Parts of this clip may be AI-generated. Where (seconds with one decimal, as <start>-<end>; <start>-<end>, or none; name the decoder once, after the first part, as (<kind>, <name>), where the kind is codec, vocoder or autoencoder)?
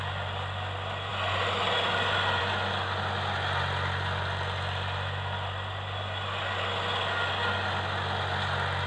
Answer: none